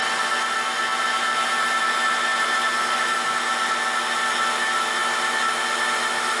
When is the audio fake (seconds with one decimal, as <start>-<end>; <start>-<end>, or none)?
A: none